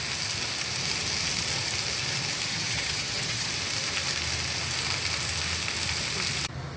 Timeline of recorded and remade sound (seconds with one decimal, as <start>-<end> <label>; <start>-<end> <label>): 0.0-2.5 recorded; 2.5-3.5 remade; 3.5-6.8 recorded